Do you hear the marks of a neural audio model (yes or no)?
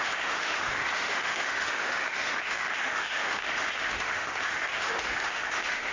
yes